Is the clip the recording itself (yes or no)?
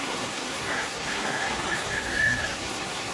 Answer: no